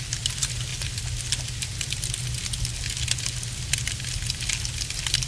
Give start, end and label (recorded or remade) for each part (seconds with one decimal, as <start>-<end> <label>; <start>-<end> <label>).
0.0-5.3 recorded